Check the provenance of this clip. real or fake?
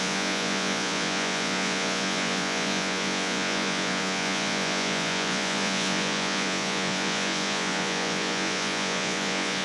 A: fake